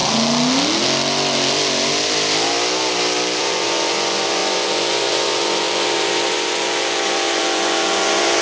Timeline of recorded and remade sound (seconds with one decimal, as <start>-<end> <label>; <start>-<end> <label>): 0.0-3.4 recorded; 3.4-8.4 remade